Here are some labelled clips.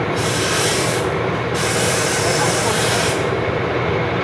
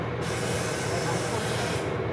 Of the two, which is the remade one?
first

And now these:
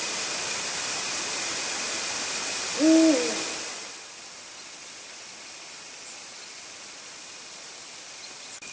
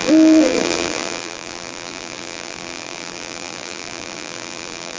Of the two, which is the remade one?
second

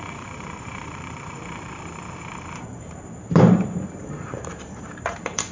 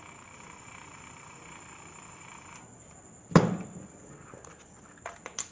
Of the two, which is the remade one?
first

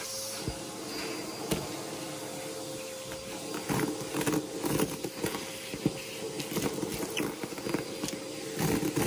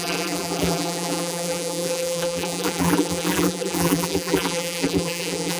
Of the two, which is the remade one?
second